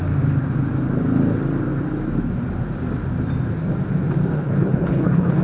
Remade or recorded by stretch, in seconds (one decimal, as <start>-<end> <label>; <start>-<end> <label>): 0.0-4.3 recorded; 4.3-5.4 remade

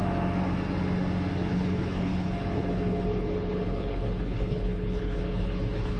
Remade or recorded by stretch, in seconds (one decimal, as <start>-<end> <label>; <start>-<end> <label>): 0.0-1.5 recorded; 1.5-6.0 remade

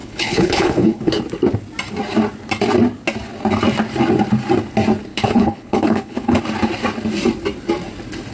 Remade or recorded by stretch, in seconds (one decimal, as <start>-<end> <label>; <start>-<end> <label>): 0.0-1.2 remade; 1.2-5.1 recorded; 5.1-6.4 remade; 6.4-8.3 recorded